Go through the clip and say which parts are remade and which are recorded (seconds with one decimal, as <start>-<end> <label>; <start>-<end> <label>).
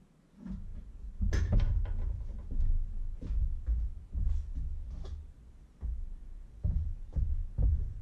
0.0-6.2 recorded; 6.2-7.5 remade; 7.5-8.0 recorded